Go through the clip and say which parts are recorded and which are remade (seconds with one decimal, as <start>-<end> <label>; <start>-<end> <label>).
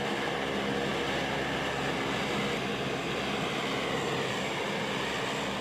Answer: 0.0-5.6 recorded